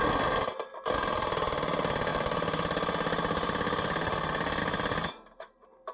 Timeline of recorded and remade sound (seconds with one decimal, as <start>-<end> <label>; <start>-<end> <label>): 0.0-5.9 recorded